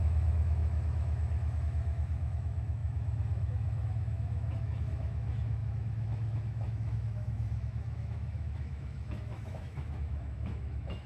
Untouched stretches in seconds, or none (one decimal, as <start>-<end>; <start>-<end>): none